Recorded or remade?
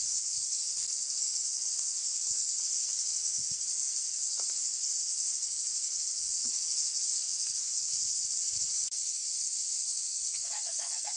remade